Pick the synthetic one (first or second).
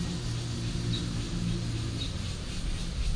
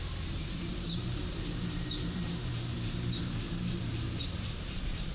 second